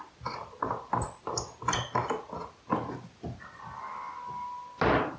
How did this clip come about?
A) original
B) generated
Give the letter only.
A